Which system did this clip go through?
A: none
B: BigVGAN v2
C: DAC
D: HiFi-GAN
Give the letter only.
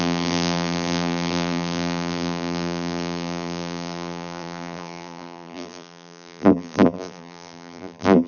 B